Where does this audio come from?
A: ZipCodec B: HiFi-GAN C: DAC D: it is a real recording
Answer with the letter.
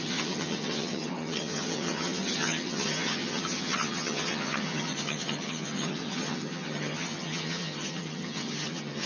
B